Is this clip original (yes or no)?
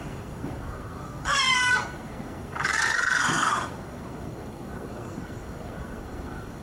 no